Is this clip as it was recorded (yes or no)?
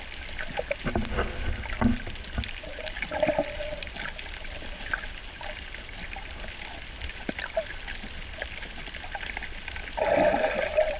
yes